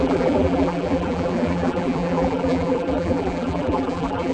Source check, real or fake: fake